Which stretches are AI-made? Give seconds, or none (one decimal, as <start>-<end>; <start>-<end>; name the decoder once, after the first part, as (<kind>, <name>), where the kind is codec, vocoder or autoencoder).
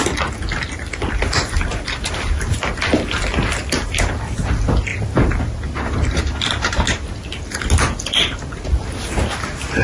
none